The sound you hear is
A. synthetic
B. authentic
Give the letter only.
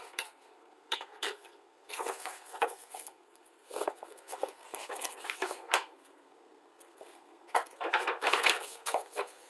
A